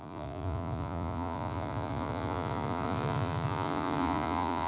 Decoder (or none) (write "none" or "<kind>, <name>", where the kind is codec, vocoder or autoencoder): vocoder, Vocos